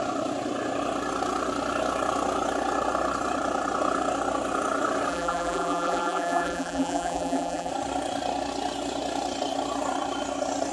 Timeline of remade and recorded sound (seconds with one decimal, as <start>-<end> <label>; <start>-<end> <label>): 0.0-5.1 recorded; 5.1-7.7 remade; 7.7-10.7 recorded